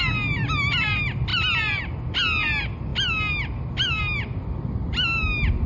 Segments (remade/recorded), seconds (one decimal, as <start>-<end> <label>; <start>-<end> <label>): 0.0-5.7 recorded